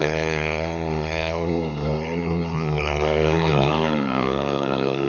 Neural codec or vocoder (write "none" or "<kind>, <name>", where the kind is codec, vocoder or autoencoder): codec, SNAC